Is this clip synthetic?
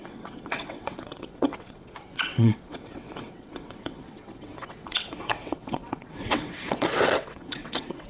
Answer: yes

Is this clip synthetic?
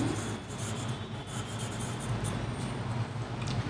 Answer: no